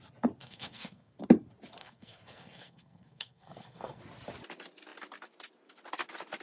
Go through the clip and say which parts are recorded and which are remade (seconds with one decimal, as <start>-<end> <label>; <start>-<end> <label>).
0.0-0.4 recorded; 0.4-1.1 remade; 1.1-1.8 recorded; 1.8-4.0 remade; 4.0-6.4 recorded